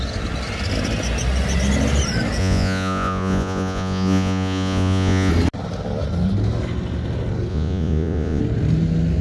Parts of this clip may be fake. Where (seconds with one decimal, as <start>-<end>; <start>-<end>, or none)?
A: 2.4-5.3; 7.5-8.4